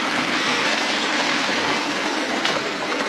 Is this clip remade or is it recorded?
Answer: remade